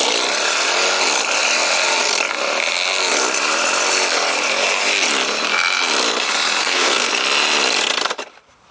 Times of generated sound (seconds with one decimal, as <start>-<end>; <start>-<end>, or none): 6.6-7.1